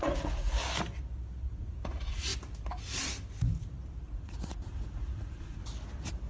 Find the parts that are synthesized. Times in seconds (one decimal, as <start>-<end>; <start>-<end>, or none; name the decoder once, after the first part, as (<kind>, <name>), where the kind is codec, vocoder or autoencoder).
0.0-0.6 (vocoder, Vocos); 1.4-2.3; 4.0-5.6